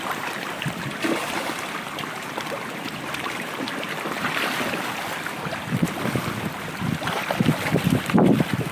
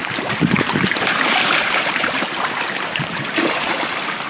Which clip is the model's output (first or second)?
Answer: second